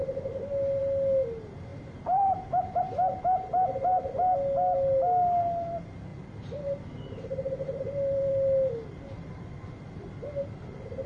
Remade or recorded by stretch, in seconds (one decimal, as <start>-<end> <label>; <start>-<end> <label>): 0.0-6.1 recorded; 6.1-10.1 remade; 10.1-11.1 recorded